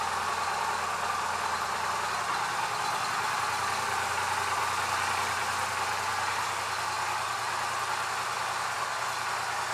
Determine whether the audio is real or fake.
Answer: real